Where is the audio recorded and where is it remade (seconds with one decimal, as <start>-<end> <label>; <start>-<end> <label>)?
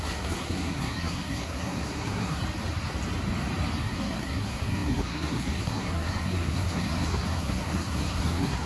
0.0-2.4 remade; 2.4-3.8 recorded; 3.8-8.7 remade